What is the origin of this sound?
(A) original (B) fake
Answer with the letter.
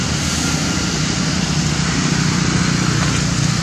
A